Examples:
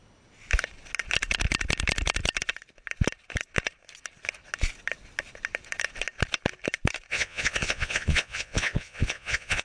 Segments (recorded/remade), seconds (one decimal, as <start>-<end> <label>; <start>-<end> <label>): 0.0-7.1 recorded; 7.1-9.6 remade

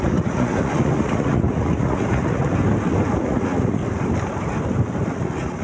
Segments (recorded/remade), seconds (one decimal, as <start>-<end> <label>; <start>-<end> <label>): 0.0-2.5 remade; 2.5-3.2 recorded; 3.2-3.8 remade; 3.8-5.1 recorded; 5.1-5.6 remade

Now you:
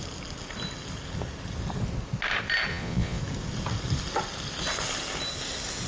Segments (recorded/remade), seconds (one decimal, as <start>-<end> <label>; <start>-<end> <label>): 0.0-2.7 recorded; 2.7-3.2 remade; 3.2-5.9 recorded

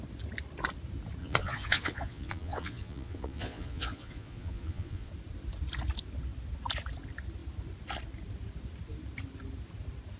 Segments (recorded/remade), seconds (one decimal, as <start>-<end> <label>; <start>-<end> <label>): 0.0-1.2 recorded; 1.2-5.1 remade; 5.1-10.2 recorded